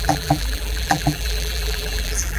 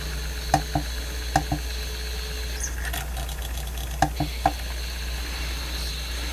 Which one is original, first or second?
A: second